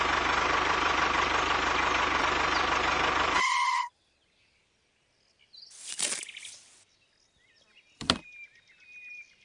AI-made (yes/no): no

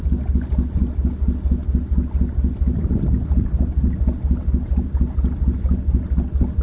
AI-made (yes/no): no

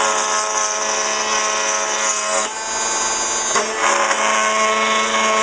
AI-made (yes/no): no